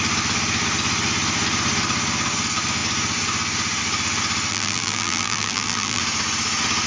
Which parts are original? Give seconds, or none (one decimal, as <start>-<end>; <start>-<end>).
0.0-4.5; 6.0-6.9